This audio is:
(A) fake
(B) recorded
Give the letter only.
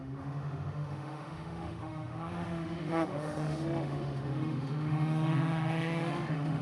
A